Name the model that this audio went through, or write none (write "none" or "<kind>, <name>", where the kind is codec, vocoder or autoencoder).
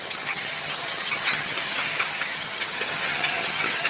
vocoder, HiFi-GAN